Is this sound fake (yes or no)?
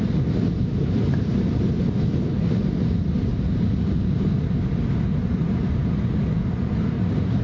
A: no